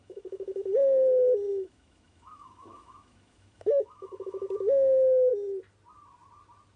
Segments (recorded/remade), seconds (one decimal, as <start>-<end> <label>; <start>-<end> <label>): 0.0-0.7 remade; 0.7-1.5 recorded; 1.5-5.3 remade; 5.3-6.8 recorded